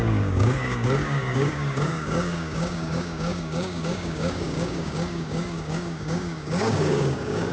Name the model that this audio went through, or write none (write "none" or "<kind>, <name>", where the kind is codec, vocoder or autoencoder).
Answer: codec, DAC